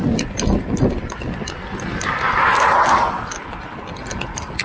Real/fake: real